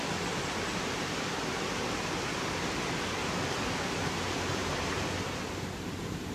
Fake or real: real